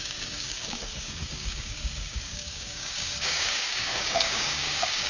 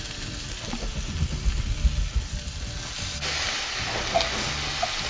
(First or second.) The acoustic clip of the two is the second